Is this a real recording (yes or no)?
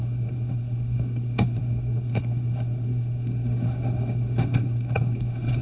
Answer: no